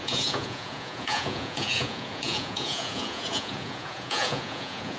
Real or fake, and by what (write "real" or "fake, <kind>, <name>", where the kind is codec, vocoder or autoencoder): fake, vocoder, Vocos